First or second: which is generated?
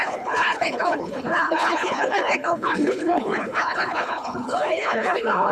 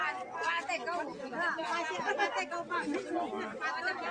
first